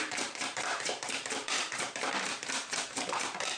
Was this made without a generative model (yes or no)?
no